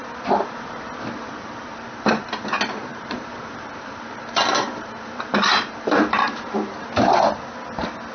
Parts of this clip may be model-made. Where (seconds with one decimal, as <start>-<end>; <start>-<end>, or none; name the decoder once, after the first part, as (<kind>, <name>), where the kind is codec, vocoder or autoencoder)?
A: 0.0-2.3 (vocoder, BigVGAN v2); 2.9-6.7